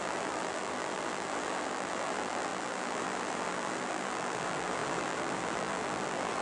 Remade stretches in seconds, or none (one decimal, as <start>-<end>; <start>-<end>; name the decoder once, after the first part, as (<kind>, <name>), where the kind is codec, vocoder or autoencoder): 0.0-6.4 (vocoder, BigVGAN v2)